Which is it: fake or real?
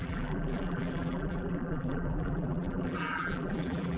fake